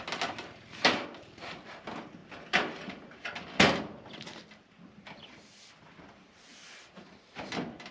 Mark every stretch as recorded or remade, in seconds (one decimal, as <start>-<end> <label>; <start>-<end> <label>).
0.0-2.2 recorded; 2.2-5.7 remade; 5.7-7.9 recorded